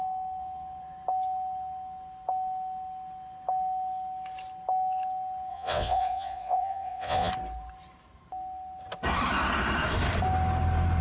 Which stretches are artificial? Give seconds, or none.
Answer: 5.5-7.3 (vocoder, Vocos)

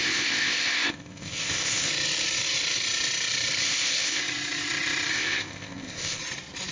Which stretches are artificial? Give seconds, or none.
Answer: 0.0-1.9 (codec, ZipCodec); 3.6-4.2; 5.1-6.2

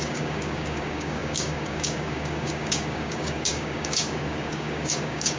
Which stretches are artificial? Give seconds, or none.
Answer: 0.0-5.4 (codec, DAC)